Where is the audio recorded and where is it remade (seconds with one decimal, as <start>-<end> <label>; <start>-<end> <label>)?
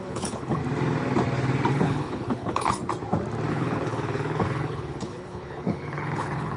0.0-0.6 remade; 0.6-1.7 recorded; 1.7-2.8 remade; 2.8-3.5 recorded; 3.5-6.6 remade